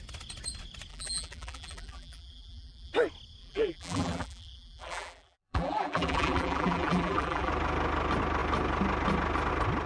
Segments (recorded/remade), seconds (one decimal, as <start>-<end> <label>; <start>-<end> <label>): 0.0-0.9 recorded; 0.9-2.9 remade; 2.9-3.4 recorded; 3.4-7.5 remade; 7.5-9.9 recorded